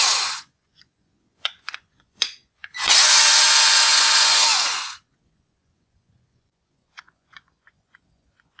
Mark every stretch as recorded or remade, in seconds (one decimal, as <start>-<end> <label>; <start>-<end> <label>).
0.0-8.6 remade